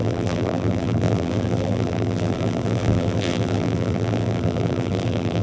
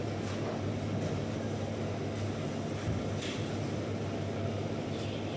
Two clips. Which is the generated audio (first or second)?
first